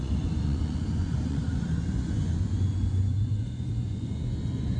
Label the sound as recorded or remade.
remade